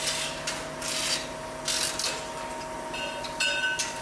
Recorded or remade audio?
recorded